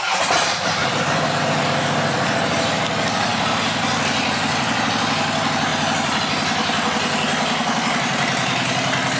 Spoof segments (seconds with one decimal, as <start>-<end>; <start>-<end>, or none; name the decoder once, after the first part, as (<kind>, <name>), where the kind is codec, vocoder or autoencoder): 0.8-2.8 (vocoder, BigVGAN v2); 3.3-4.9; 5.7-6.2